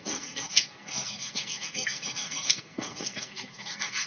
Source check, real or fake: fake